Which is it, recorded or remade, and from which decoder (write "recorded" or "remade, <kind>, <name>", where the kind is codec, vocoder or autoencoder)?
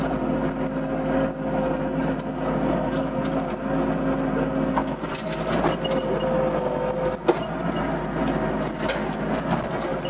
recorded